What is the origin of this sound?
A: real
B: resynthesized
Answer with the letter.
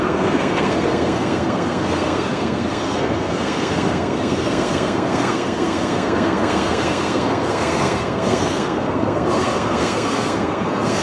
B